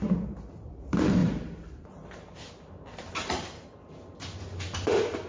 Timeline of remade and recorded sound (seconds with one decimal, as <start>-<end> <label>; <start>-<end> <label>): 0.0-5.3 recorded